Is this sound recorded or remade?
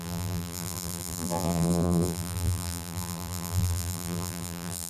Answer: remade